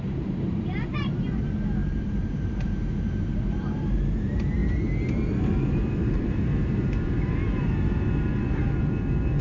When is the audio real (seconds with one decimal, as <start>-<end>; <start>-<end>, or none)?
none